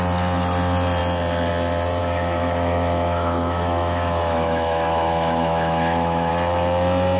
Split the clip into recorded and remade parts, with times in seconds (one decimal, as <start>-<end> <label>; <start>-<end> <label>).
0.0-2.0 recorded; 2.0-6.3 remade; 6.3-7.2 recorded